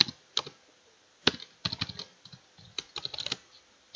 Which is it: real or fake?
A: real